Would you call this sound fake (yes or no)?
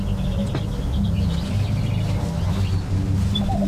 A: no